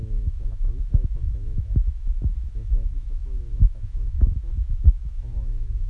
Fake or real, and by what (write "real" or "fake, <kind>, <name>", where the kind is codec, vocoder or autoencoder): fake, autoencoder, DAC-VAE